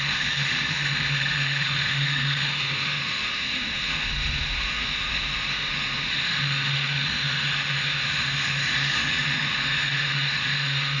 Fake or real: fake